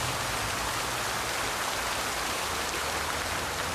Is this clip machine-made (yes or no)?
no